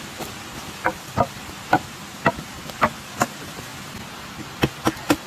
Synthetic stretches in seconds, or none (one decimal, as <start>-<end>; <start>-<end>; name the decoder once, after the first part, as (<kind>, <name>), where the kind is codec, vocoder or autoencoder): 0.5-1.3 (vocoder, BigVGAN v2)